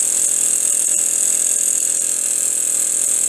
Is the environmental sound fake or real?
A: real